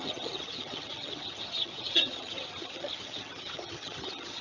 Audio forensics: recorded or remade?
remade